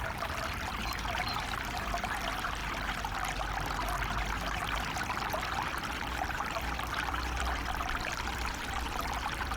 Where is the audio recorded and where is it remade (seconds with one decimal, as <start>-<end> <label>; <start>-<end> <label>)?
0.0-2.6 remade; 2.6-5.4 recorded; 5.4-9.6 remade